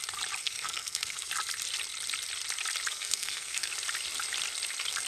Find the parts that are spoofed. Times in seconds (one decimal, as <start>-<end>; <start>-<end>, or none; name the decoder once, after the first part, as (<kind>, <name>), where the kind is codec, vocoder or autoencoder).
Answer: 0.4-1.3 (codec, SNAC); 2.9-3.7